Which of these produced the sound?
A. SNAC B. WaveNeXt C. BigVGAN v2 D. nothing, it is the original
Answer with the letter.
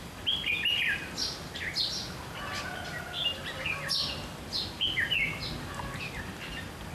D